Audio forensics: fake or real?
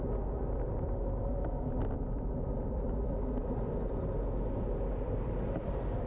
real